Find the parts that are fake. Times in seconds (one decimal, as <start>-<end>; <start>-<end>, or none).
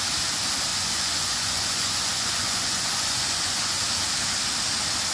0.7-3.8